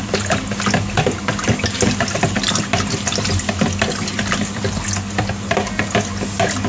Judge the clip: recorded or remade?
recorded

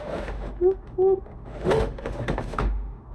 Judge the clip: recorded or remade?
remade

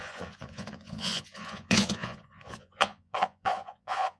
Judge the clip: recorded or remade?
remade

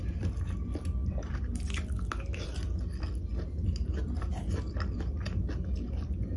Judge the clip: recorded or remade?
recorded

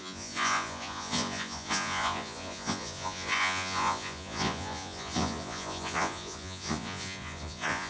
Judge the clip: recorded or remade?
remade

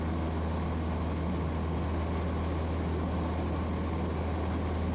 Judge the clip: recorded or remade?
recorded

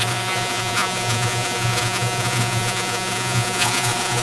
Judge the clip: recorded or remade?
remade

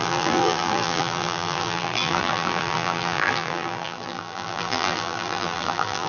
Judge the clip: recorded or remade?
remade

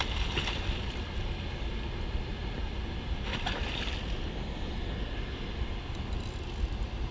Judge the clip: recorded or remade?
recorded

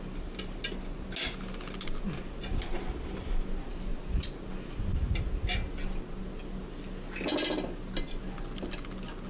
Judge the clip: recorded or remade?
recorded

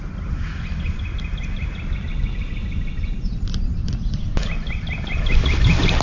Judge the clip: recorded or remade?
recorded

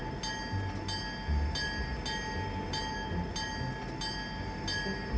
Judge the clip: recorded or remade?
recorded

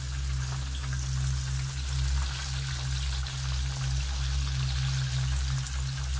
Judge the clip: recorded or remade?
recorded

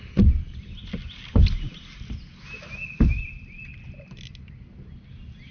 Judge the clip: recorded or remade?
recorded